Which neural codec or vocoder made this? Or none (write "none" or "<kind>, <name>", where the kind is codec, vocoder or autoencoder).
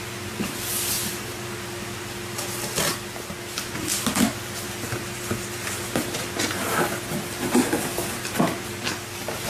none